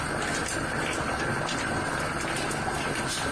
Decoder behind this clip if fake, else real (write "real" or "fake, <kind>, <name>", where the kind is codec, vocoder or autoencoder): real